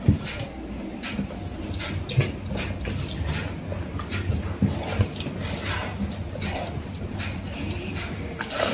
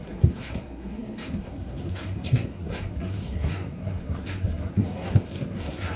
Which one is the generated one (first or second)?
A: second